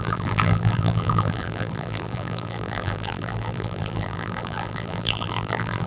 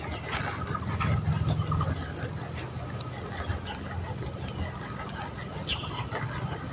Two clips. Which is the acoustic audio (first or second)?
second